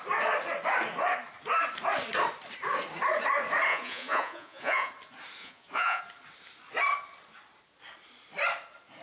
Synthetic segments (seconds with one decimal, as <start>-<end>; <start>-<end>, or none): 3.7-4.9; 5.4-6.0